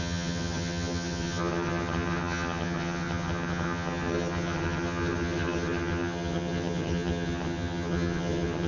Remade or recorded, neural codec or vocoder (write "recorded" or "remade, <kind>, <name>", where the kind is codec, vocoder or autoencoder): remade, vocoder, HiFi-GAN